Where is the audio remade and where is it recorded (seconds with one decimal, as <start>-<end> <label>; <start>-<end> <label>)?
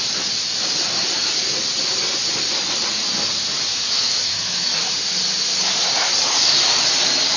0.0-3.7 recorded; 3.7-4.7 remade; 4.7-7.4 recorded